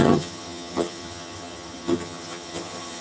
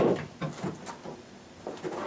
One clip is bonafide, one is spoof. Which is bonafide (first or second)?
second